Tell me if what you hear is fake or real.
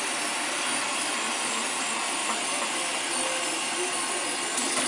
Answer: real